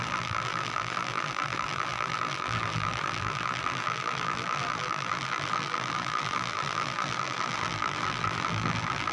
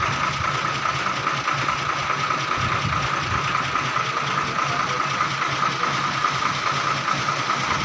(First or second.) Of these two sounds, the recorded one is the second